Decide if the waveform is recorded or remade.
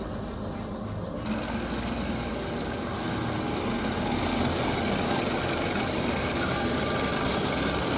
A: recorded